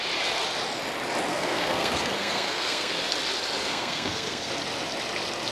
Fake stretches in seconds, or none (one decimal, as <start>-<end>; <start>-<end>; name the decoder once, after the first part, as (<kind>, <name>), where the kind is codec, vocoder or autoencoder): 1.3-3.0 (codec, SNAC); 3.6-4.5

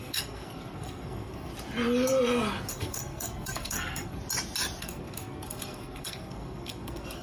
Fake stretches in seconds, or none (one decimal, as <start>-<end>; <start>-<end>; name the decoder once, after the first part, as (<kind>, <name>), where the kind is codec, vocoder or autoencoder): 0.0-1.5 (codec, SNAC); 2.7-4.2; 4.8-7.2

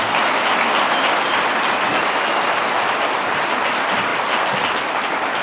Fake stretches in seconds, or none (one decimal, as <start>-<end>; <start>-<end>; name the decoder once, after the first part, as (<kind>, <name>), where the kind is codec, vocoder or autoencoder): none

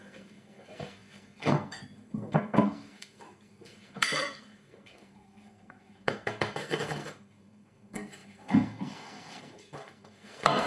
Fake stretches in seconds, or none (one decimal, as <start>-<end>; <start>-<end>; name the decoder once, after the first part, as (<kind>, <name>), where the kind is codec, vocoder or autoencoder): 0.0-10.7 (codec, SNAC)

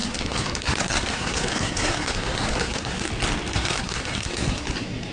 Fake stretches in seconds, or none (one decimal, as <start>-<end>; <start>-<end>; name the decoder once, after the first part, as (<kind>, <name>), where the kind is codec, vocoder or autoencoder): 0.0-3.1 (codec, SNAC); 3.5-5.1

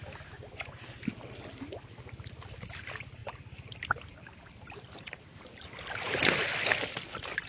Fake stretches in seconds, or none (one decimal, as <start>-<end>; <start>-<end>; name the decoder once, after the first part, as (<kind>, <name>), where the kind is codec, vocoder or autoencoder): none

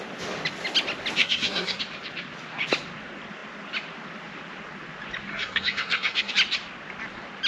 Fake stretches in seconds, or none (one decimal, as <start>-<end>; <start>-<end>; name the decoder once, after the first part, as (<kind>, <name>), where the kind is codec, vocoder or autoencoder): 1.2-1.8 (codec, SNAC); 5.3-6.3

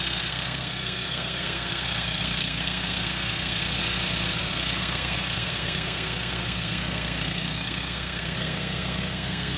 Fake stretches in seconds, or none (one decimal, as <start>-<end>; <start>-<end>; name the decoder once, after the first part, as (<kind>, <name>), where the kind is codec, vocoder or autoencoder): 0.0-3.8 (codec, SNAC); 4.4-9.6